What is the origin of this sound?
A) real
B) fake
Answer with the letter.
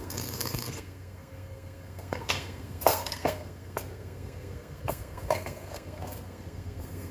B